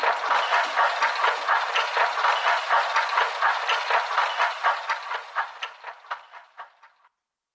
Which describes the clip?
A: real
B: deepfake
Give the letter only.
A